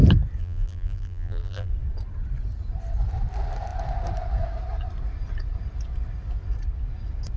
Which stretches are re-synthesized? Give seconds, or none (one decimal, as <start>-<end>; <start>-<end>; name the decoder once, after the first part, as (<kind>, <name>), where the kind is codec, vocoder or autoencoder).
0.4-1.7 (vocoder, BigVGAN v2)